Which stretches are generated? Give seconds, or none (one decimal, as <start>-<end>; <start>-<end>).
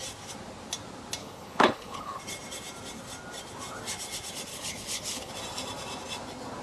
1.2-2.2; 4.5-5.3